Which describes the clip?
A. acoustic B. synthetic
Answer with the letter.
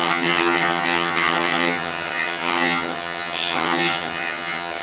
B